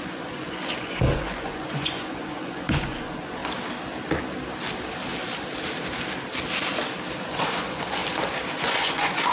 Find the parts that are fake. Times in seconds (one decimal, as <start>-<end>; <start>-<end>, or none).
0.0-3.4; 7.2-8.0; 8.6-9.3